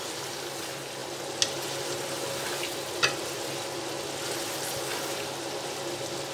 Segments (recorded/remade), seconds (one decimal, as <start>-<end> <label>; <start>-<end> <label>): 0.0-6.3 recorded